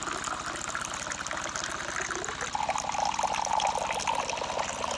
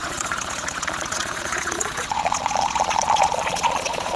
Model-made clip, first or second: second